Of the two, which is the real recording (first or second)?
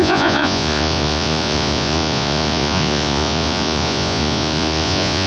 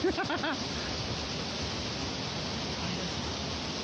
second